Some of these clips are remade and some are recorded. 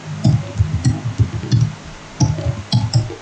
recorded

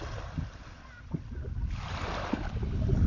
recorded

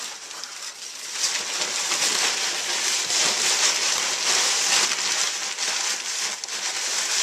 recorded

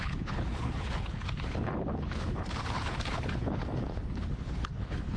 remade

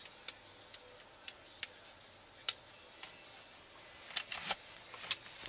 recorded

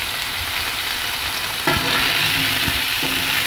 recorded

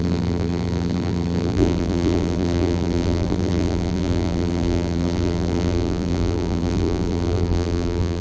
remade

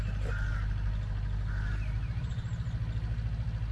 recorded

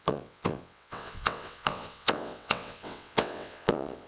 remade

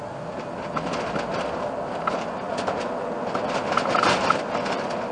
remade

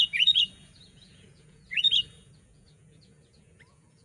remade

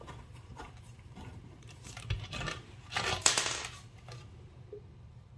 remade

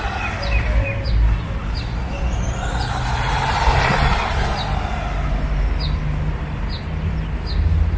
recorded